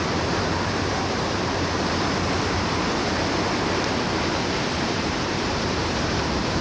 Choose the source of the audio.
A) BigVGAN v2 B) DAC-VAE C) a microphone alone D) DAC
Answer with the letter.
A